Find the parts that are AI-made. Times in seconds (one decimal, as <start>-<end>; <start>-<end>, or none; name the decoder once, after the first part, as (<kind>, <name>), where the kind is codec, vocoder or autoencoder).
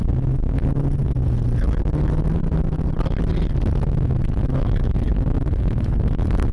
3.9-6.5 (autoencoder, DAC-VAE)